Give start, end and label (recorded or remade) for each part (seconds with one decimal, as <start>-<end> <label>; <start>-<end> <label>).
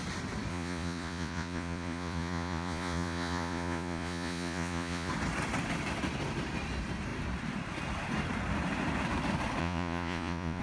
0.0-0.5 recorded; 0.5-5.1 remade; 5.1-9.6 recorded; 9.6-10.6 remade